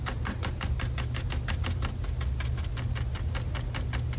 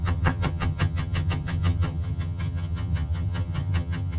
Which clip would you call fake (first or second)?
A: second